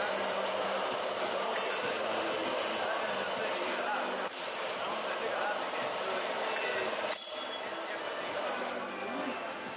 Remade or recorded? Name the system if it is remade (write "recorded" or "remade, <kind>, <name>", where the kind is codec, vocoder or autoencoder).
recorded